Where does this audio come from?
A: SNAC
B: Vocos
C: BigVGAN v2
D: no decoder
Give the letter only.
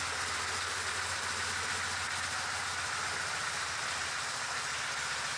D